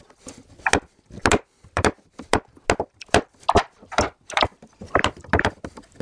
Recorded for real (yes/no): yes